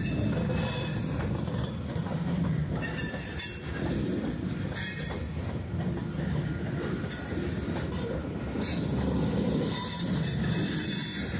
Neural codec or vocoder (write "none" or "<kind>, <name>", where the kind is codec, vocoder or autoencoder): none